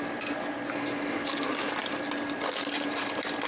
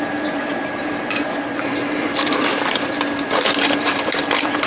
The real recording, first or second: first